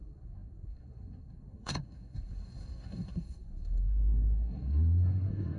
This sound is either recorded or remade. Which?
remade